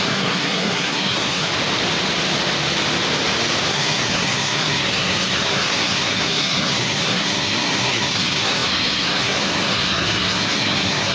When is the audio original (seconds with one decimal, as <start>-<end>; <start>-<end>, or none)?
1.5-3.7